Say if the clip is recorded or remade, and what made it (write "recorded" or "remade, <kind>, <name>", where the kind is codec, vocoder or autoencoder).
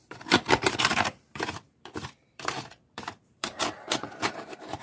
remade, vocoder, BigVGAN v2